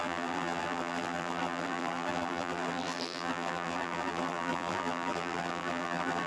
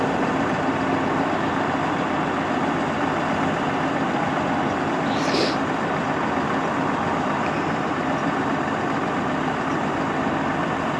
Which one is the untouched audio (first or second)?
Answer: second